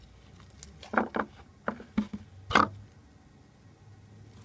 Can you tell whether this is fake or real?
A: real